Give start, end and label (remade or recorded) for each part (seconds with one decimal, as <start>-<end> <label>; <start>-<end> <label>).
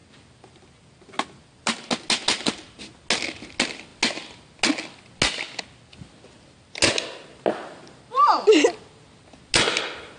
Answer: 0.0-10.2 recorded